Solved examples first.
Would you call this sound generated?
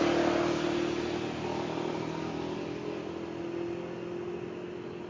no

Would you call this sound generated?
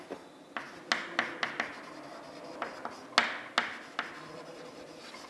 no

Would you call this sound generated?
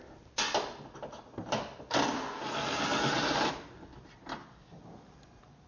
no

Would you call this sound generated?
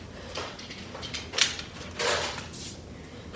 no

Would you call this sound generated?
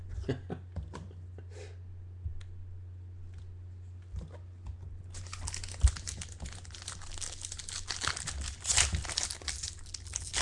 no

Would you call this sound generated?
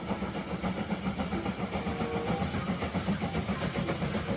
no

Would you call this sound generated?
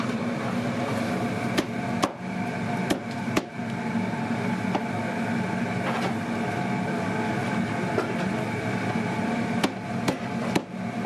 no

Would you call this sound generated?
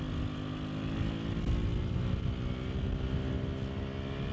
no